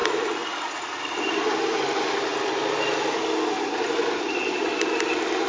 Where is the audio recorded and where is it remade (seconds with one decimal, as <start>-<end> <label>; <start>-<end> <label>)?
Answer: 0.0-5.5 recorded

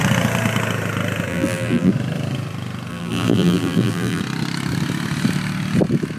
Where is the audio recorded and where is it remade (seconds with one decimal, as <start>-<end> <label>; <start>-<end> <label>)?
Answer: 0.0-1.3 recorded; 1.3-1.9 remade; 1.9-2.9 recorded; 2.9-4.2 remade; 4.2-6.2 recorded

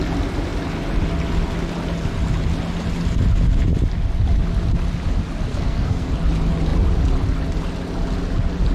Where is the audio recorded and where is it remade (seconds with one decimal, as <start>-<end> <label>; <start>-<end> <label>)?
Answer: 0.0-5.5 recorded; 5.5-6.1 remade; 6.1-8.7 recorded

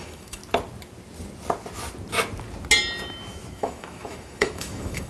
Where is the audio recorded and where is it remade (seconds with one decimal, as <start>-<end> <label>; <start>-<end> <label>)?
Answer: 0.0-0.4 remade; 0.4-3.5 recorded; 3.5-5.1 remade

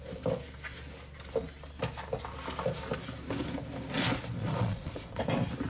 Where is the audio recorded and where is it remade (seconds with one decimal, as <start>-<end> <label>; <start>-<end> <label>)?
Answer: 0.0-4.4 recorded; 4.4-5.2 remade; 5.2-5.7 recorded

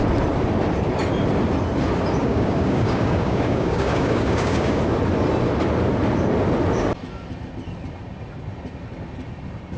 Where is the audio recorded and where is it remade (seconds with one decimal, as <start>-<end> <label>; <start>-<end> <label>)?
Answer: 0.0-2.2 recorded; 2.2-4.8 remade; 4.8-9.8 recorded

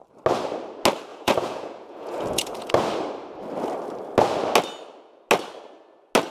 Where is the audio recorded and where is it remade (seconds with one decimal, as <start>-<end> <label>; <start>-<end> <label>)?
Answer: 0.0-1.1 recorded; 1.1-2.7 remade; 2.7-6.3 recorded

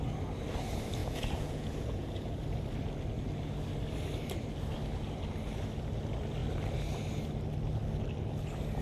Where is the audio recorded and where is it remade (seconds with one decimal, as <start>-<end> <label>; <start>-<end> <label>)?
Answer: 0.0-1.0 recorded; 1.0-2.4 remade; 2.4-8.8 recorded